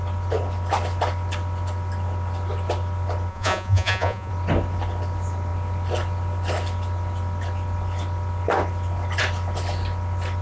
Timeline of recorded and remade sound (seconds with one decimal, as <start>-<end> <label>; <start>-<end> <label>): 0.0-3.3 recorded; 3.3-4.3 remade; 4.3-10.4 recorded